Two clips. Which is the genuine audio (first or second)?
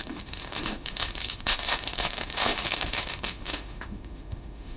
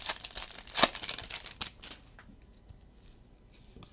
second